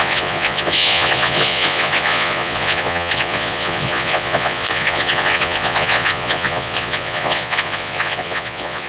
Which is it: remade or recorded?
remade